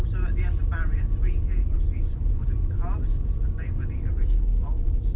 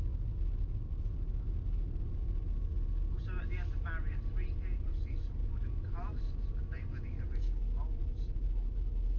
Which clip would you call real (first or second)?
second